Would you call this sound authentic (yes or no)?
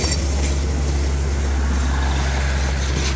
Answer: yes